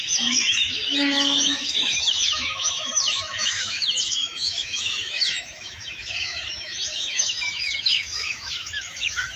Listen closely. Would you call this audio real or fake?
fake